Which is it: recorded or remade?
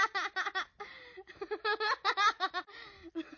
recorded